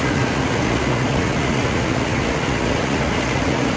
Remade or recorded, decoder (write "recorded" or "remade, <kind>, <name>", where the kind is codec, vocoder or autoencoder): remade, vocoder, Vocos